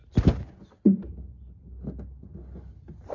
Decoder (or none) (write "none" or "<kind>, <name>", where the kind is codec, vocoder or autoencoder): none